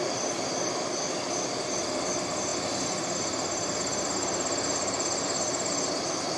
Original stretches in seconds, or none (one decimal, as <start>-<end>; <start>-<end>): 0.0-6.4